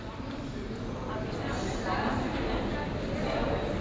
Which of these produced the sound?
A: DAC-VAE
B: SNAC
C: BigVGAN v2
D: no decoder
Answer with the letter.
D